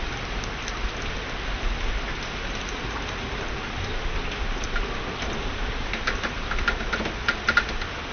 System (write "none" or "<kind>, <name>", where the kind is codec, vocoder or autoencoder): none